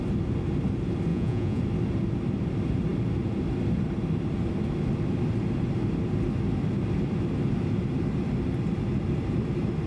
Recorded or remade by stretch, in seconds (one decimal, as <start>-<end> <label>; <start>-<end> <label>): 0.0-1.1 recorded; 1.1-1.6 remade; 1.6-9.9 recorded